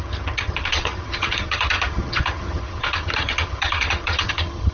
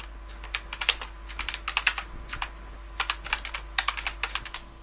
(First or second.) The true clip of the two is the second